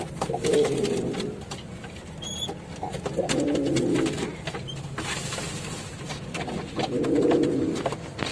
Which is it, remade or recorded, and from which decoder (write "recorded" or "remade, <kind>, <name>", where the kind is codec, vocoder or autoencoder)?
recorded